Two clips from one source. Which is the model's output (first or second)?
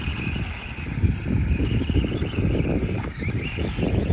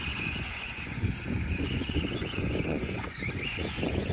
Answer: second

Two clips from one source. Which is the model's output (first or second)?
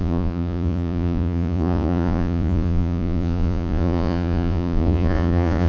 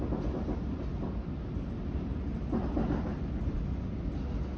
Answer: first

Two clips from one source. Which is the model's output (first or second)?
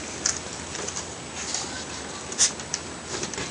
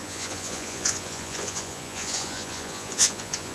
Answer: second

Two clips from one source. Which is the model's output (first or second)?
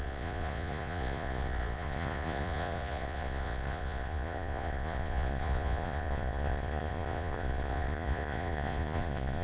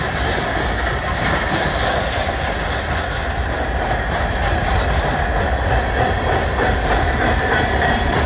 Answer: first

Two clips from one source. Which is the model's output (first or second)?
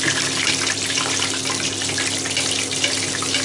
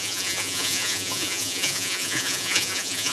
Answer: second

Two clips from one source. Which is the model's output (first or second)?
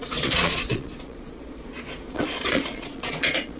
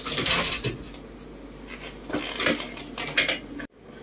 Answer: first